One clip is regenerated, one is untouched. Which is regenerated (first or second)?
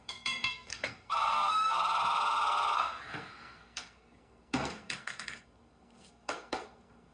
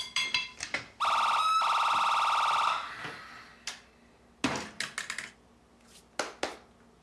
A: first